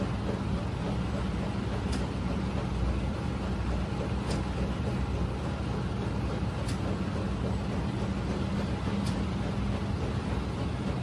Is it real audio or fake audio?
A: real